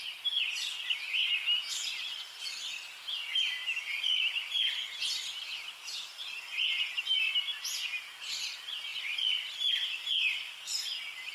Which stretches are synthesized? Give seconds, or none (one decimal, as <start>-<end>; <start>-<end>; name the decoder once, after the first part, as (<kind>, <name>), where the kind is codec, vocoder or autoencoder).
none